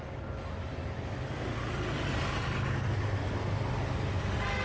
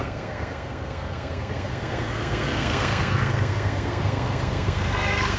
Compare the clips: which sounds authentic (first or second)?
first